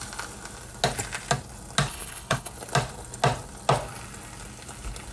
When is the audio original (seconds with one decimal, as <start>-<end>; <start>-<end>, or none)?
0.0-1.9; 2.5-5.1